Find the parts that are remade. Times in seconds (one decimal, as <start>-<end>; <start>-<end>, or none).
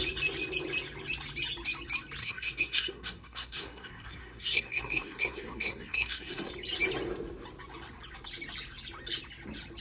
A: 2.2-6.5